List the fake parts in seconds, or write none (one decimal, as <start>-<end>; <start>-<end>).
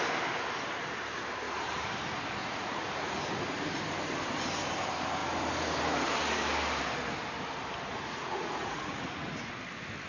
2.4-3.2; 7.9-9.5